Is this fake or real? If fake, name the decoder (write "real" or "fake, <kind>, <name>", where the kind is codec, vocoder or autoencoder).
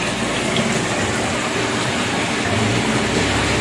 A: real